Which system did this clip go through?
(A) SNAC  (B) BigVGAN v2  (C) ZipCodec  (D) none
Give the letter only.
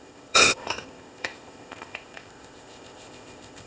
C